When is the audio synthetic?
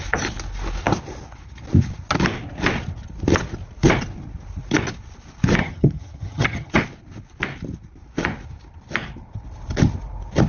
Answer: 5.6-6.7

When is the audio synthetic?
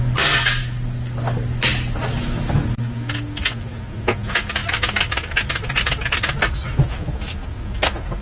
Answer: none